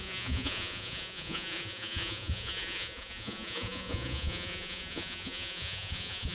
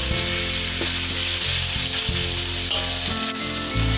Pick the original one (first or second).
second